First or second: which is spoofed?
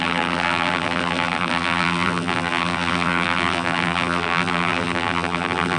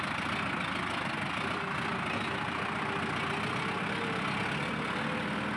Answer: first